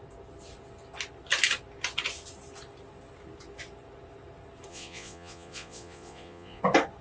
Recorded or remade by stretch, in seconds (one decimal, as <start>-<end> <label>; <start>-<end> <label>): 0.0-4.7 recorded; 4.7-6.6 remade; 6.6-7.0 recorded